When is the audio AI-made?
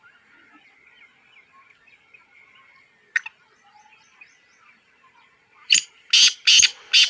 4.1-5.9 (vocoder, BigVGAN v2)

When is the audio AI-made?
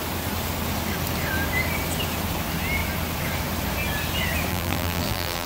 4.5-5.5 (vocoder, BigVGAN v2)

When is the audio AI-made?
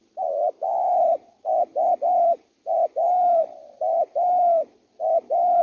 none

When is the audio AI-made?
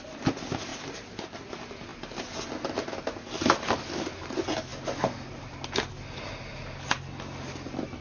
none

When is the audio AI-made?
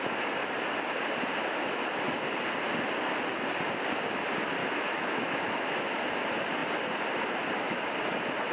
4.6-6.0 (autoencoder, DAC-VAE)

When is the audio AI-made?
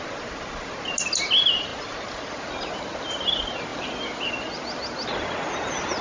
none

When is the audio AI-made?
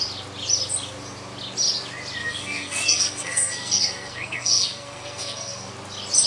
2.2-5.7 (codec, SNAC)